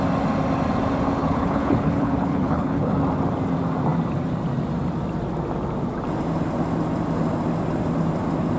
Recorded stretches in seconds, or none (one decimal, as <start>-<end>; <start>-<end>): 0.0-1.2; 3.0-8.6